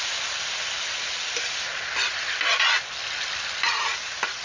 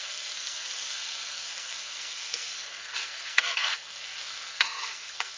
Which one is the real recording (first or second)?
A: first